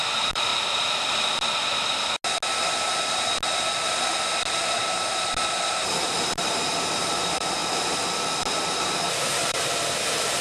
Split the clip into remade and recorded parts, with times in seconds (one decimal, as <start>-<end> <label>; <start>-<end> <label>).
0.0-0.5 remade; 0.5-5.6 recorded; 5.6-7.6 remade; 7.6-8.7 recorded; 8.7-10.4 remade